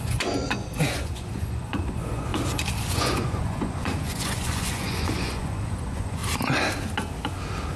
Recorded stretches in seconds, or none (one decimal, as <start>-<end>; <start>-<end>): 2.3-2.9; 6.2-7.8